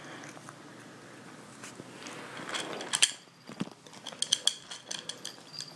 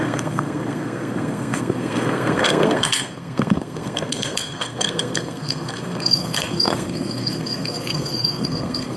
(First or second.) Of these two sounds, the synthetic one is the second